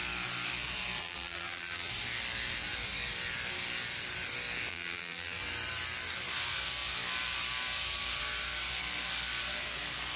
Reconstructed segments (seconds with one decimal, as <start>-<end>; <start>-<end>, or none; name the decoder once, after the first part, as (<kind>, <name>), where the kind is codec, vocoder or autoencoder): 1.0-1.9 (vocoder, BigVGAN v2); 4.7-5.4